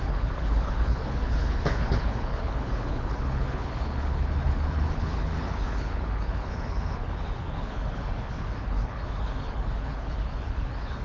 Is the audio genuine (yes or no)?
no